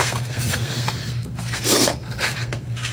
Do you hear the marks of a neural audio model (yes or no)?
yes